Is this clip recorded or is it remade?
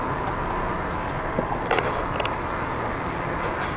recorded